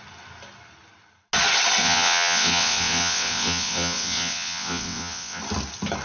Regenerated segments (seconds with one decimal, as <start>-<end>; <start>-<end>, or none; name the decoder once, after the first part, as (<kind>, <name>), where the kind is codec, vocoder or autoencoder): 1.8-5.4 (vocoder, WaveNeXt)

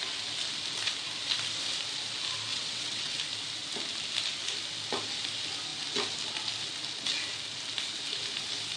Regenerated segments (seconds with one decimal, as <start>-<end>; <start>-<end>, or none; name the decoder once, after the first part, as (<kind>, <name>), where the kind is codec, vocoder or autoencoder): 2.5-3.2 (vocoder, WaveNeXt)

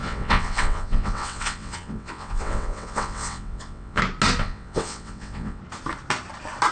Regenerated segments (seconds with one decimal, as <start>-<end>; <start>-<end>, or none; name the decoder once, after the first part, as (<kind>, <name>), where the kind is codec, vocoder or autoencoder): 0.0-4.0 (vocoder, WaveNeXt); 4.4-5.6

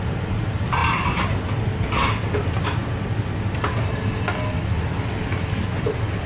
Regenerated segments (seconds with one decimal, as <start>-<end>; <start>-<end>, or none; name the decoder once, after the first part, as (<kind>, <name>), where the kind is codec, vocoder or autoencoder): none

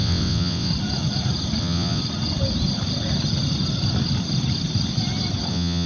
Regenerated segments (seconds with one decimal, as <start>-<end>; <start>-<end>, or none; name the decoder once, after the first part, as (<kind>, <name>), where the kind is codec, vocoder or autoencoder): 0.0-0.7 (vocoder, WaveNeXt); 1.6-2.0; 5.5-5.9